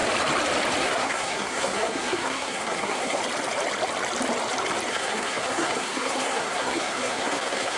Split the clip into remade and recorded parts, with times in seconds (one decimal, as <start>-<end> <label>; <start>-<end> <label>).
0.0-0.8 recorded; 0.8-3.2 remade; 3.2-4.9 recorded; 4.9-7.8 remade